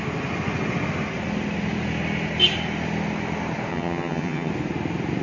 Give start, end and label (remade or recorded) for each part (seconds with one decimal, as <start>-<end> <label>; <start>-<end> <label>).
0.0-3.7 recorded; 3.7-4.5 remade; 4.5-5.2 recorded